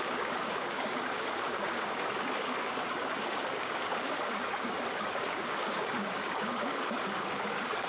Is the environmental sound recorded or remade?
remade